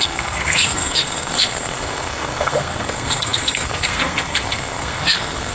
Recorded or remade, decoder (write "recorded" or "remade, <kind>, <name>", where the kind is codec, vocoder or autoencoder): remade, codec, SNAC